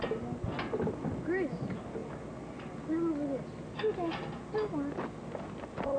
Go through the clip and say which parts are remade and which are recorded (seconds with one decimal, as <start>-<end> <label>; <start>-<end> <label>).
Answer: 0.0-6.0 recorded